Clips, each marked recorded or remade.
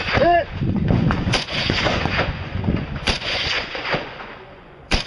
remade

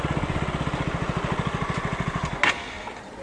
recorded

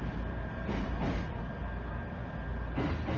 recorded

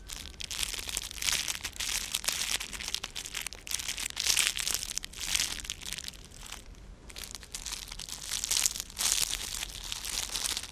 recorded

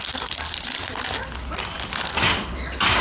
recorded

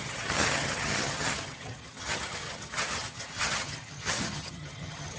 remade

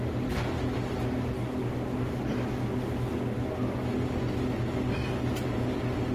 recorded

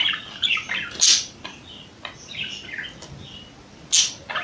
recorded